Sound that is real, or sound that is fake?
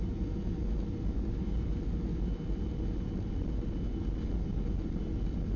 real